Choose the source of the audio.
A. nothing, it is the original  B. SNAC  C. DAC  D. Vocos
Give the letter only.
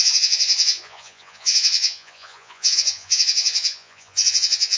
D